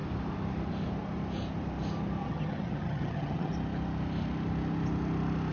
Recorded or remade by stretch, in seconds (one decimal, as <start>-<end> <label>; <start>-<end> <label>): 0.0-2.2 recorded; 2.2-3.5 remade; 3.5-5.5 recorded

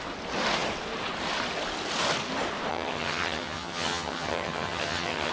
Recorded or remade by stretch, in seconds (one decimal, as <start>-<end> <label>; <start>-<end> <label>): 0.0-2.7 recorded; 2.7-5.3 remade

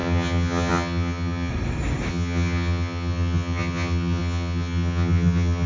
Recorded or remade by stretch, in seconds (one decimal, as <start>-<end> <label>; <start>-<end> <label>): 0.0-1.5 remade; 1.5-2.1 recorded; 2.1-5.7 remade

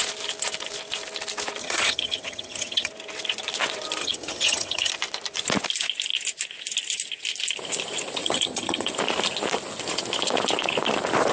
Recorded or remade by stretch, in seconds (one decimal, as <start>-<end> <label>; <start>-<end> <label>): 0.0-1.6 recorded; 1.6-2.9 remade; 2.9-4.0 recorded; 4.0-4.9 remade; 4.9-8.2 recorded; 8.2-8.9 remade; 8.9-11.3 recorded

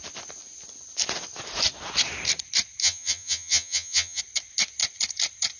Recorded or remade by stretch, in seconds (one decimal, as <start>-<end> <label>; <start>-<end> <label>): 0.0-2.8 recorded; 2.8-4.2 remade; 4.2-5.6 recorded

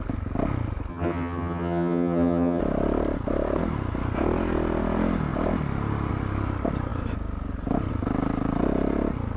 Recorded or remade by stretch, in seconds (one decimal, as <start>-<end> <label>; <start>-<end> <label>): 0.0-0.9 recorded; 0.9-2.6 remade; 2.6-9.4 recorded